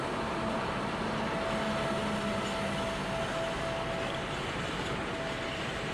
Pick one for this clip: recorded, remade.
recorded